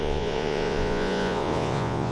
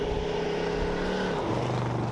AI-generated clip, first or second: first